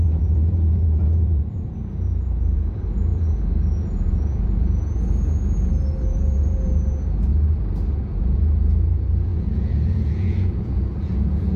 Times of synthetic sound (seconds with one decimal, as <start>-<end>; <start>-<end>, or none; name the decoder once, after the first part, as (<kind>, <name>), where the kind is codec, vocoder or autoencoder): 0.0-7.3 (vocoder, Vocos); 7.9-11.6